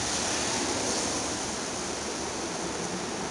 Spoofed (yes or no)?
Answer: no